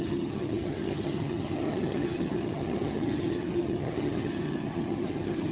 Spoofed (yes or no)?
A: yes